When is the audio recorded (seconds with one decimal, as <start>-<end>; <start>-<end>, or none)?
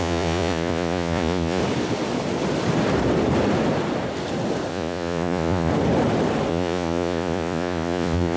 1.6-4.7; 5.7-6.5